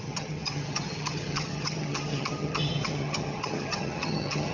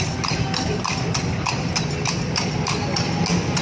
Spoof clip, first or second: first